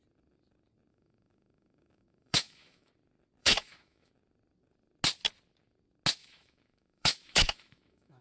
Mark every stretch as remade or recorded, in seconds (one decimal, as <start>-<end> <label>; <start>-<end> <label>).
0.0-0.9 recorded; 0.9-2.9 remade; 2.9-3.4 recorded; 3.4-4.1 remade; 4.1-6.2 recorded; 6.2-8.2 remade